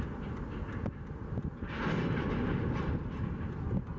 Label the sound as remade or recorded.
recorded